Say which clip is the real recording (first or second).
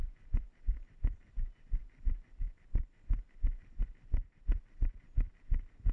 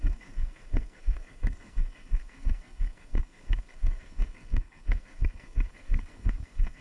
first